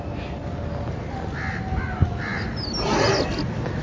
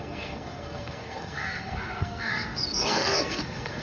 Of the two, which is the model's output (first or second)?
second